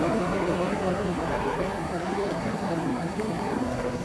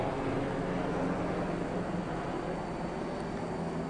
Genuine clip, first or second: second